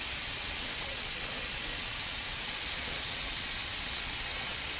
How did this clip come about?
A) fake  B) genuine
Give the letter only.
A